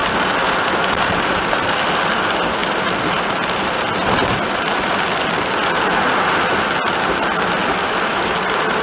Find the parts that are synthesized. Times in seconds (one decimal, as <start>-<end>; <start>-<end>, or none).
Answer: none